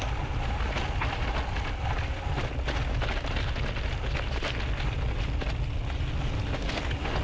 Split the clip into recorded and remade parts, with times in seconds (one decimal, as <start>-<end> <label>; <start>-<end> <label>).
0.0-7.2 recorded

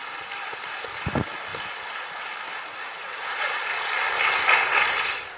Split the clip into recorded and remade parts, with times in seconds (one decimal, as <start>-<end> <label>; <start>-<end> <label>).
0.0-3.0 recorded; 3.0-3.8 remade; 3.8-5.4 recorded

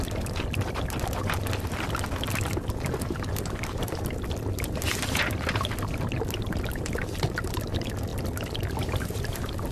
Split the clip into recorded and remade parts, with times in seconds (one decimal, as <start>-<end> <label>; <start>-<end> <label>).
0.0-9.7 recorded

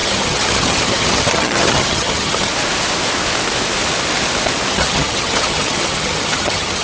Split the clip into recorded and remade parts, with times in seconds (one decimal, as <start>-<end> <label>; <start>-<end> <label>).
0.0-2.5 remade; 2.5-4.7 recorded; 4.7-6.8 remade

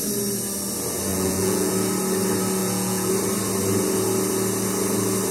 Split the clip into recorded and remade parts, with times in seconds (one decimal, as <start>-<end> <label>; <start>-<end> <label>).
0.0-1.1 recorded; 1.1-1.7 remade; 1.7-2.6 recorded; 2.6-3.1 remade; 3.1-5.3 recorded

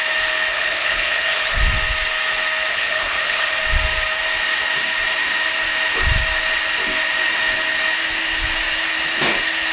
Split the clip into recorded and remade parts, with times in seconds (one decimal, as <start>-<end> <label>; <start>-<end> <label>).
0.0-0.5 recorded; 0.5-1.6 remade; 1.6-2.7 recorded; 2.7-3.6 remade; 3.6-9.7 recorded